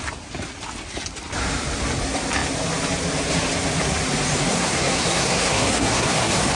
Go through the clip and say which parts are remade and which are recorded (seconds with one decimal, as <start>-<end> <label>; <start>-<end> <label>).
0.0-4.4 recorded; 4.4-6.5 remade